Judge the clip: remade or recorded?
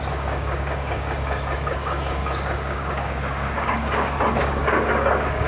remade